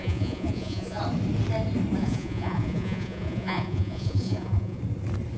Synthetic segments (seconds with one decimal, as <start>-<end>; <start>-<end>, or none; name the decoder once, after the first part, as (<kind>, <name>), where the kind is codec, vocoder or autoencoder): 0.0-1.0 (vocoder, Vocos); 2.0-4.8